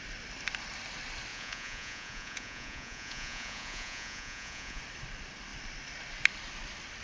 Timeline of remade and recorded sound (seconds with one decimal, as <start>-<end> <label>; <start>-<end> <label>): 0.0-1.3 recorded; 1.3-4.8 remade; 4.8-7.0 recorded